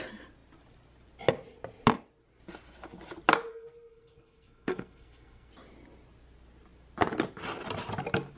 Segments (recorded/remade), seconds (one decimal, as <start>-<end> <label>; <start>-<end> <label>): 0.0-3.5 recorded; 3.5-5.5 remade; 5.5-8.4 recorded